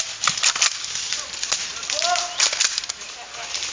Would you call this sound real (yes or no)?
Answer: yes